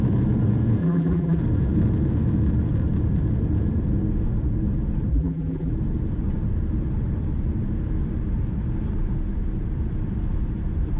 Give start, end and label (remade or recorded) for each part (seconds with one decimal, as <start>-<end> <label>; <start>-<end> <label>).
0.0-0.8 recorded; 0.8-1.4 remade; 1.4-5.1 recorded; 5.1-5.7 remade; 5.7-11.0 recorded